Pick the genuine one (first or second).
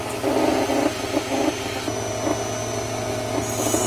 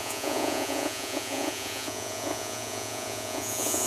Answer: first